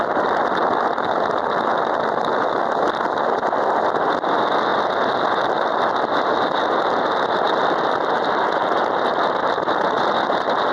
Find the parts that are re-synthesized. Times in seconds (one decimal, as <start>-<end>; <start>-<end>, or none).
none